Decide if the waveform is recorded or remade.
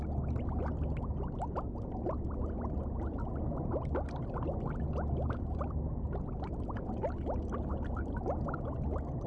recorded